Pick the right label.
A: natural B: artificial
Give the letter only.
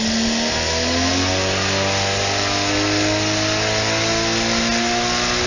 A